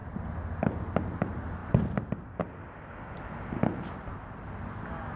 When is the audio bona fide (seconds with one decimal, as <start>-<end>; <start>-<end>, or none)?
0.0-5.2